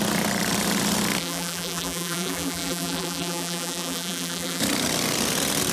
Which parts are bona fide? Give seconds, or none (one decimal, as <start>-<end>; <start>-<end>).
0.0-1.2; 4.6-5.7